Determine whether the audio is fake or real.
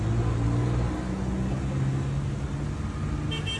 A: real